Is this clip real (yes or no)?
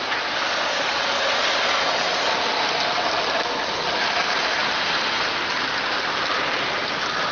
yes